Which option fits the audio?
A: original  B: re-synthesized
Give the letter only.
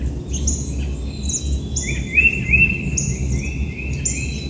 A